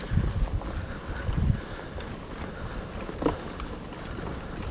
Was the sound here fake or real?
real